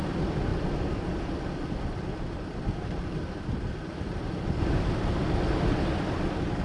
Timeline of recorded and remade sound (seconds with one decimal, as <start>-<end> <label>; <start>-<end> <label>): 0.0-6.6 recorded

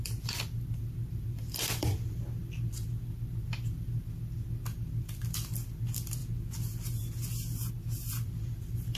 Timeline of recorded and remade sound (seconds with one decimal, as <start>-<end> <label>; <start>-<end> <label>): 0.0-6.2 remade; 6.2-7.7 recorded; 7.7-9.0 remade